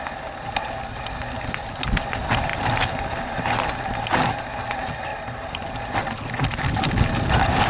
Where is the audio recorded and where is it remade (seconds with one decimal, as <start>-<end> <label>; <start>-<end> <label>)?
0.0-5.1 recorded; 5.1-5.8 remade; 5.8-7.7 recorded